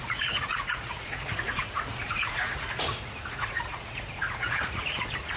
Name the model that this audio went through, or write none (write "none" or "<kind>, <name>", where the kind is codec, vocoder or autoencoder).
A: vocoder, Vocos